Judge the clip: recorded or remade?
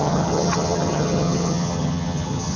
remade